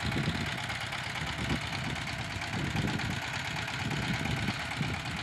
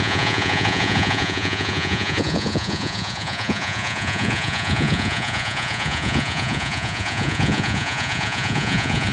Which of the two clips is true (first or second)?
first